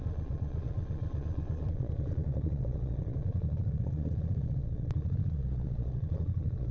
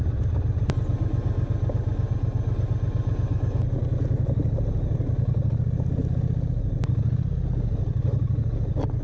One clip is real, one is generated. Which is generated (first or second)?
first